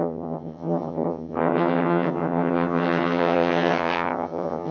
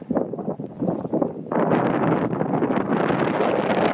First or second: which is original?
second